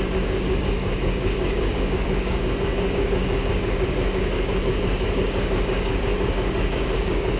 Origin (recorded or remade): remade